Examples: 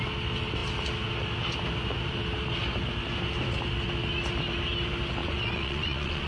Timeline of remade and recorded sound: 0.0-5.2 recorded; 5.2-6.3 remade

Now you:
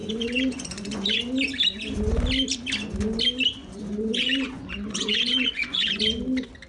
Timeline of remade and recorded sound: 0.0-1.2 remade; 1.2-3.6 recorded; 3.6-6.0 remade; 6.0-6.7 recorded

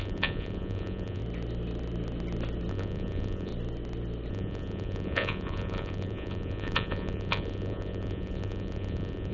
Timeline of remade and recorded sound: 0.0-1.2 remade; 1.2-2.7 recorded; 2.7-3.5 remade; 3.5-4.3 recorded; 4.3-9.3 remade

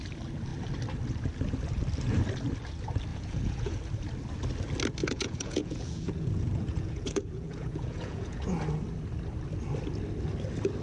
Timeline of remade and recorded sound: 0.0-3.1 recorded; 3.1-3.8 remade; 3.8-5.0 recorded; 5.0-8.4 remade; 8.4-10.8 recorded

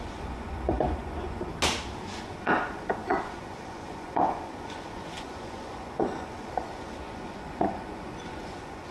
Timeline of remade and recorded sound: 0.0-1.5 remade; 1.5-2.2 recorded; 2.2-8.9 remade